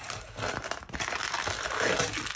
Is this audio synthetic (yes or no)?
no